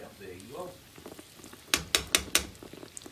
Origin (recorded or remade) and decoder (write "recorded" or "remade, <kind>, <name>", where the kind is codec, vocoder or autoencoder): recorded